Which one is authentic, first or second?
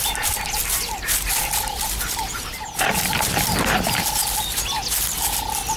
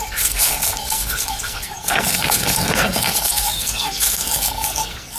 first